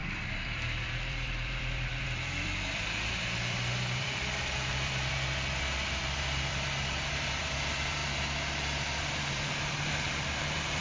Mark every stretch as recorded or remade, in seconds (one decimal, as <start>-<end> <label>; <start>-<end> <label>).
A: 0.0-8.0 remade; 8.0-9.2 recorded; 9.2-10.8 remade